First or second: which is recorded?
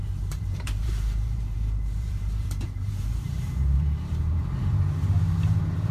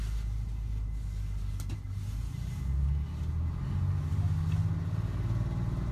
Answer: second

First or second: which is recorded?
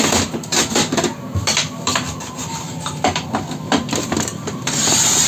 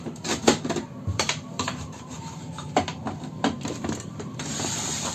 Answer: first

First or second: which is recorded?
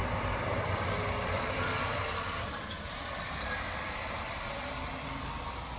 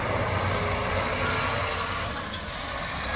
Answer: second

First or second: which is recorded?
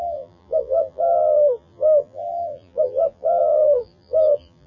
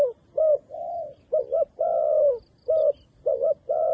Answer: second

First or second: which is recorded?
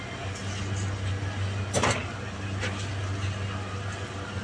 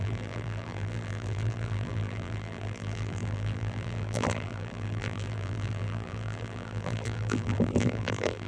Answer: first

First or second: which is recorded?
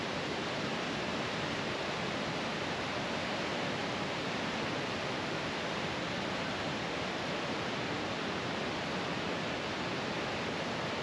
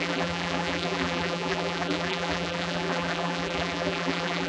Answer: first